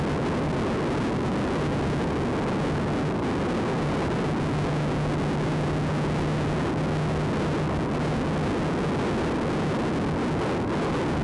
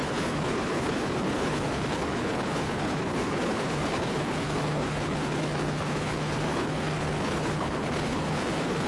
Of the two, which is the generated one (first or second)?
second